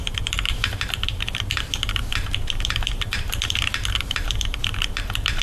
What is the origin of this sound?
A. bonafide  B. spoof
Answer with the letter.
B